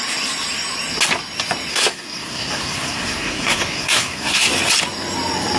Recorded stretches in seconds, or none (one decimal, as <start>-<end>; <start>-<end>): 0.0-1.7; 4.5-5.6